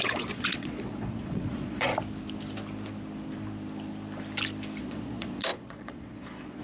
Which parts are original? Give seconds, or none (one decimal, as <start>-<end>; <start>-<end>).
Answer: 1.9-4.8